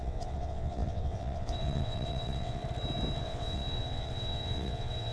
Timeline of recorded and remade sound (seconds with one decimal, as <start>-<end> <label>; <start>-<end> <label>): 0.0-2.6 remade; 2.6-3.2 recorded; 3.2-5.1 remade